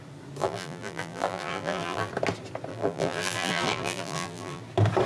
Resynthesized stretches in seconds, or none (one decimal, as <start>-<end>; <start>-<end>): 0.4-2.1; 2.7-4.6